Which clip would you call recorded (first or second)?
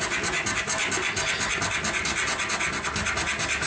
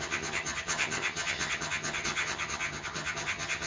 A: first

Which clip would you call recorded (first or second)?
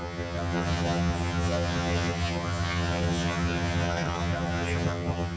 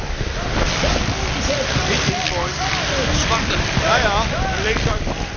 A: second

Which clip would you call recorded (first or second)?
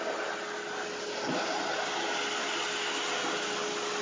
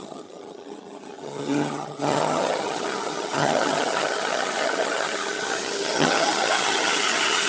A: first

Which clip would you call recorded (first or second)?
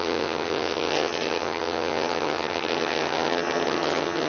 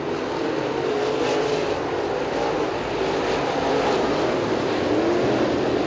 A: second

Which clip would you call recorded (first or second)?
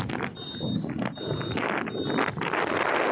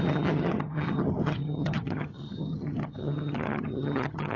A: first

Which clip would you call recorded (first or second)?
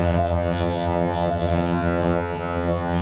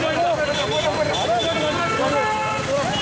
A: second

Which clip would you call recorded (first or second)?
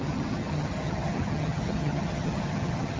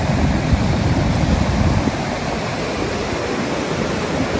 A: second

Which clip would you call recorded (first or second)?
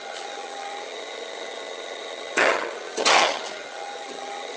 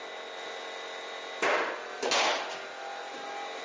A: second